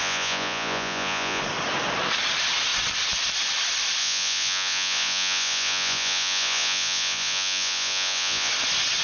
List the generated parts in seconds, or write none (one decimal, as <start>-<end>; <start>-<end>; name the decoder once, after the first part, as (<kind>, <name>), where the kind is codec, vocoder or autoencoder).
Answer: 0.0-1.4 (vocoder, Vocos); 4.0-8.5